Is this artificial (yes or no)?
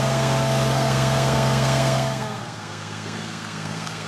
yes